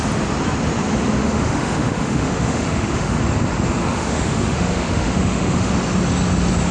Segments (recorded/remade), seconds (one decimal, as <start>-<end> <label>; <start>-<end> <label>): 0.0-1.2 recorded; 1.2-3.2 remade; 3.2-3.8 recorded; 3.8-5.7 remade; 5.7-6.7 recorded